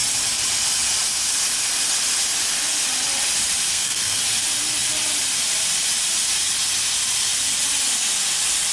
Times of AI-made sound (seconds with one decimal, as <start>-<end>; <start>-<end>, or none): 3.7-4.2